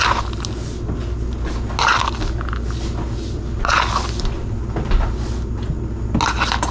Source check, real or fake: real